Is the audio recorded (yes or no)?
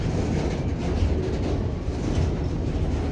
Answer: yes